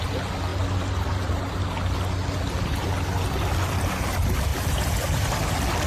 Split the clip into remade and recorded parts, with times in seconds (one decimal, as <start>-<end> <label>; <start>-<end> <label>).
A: 0.0-4.5 recorded; 4.5-5.3 remade; 5.3-5.9 recorded